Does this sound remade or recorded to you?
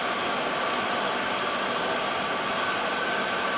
recorded